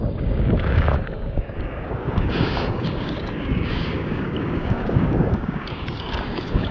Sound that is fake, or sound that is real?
fake